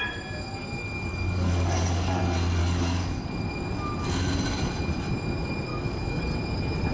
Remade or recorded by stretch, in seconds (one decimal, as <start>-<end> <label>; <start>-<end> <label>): 0.0-1.1 recorded; 1.1-2.2 remade; 2.2-2.6 recorded; 2.6-3.3 remade; 3.3-5.7 recorded; 5.7-6.2 remade; 6.2-6.9 recorded